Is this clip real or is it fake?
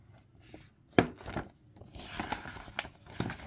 real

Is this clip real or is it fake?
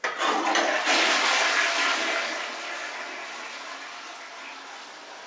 real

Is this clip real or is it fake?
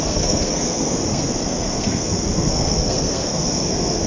fake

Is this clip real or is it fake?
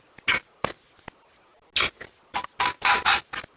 real